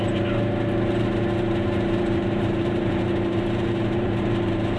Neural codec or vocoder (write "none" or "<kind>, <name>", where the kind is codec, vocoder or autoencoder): vocoder, BigVGAN v2